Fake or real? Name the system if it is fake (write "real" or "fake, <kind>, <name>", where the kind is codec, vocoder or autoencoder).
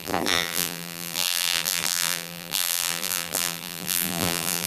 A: fake, vocoder, BigVGAN v2